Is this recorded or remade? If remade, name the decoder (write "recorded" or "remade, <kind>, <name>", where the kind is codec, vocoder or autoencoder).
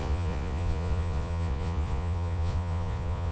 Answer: remade, vocoder, Vocos